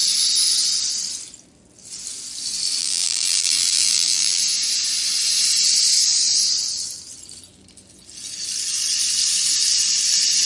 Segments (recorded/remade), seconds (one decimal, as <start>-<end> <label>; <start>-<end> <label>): 0.0-2.8 recorded; 2.8-4.4 remade; 4.4-10.5 recorded